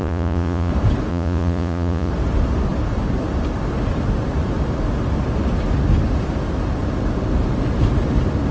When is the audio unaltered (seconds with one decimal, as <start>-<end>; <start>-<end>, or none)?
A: 0.7-1.1; 2.1-8.5